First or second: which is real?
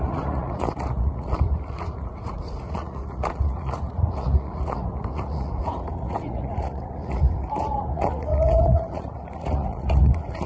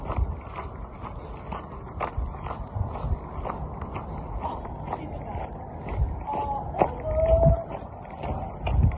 second